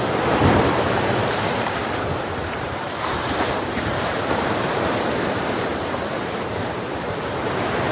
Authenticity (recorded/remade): remade